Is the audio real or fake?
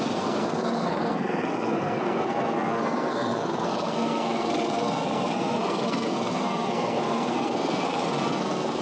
fake